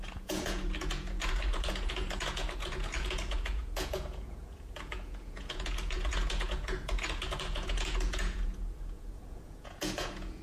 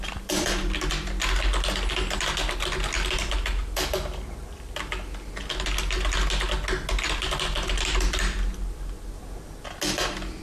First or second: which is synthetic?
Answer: first